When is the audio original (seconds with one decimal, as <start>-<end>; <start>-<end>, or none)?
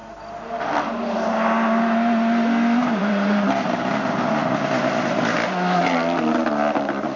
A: 0.6-3.0; 3.9-7.2